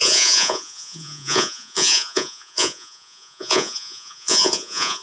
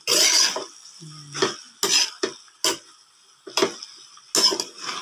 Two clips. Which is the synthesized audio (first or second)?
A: first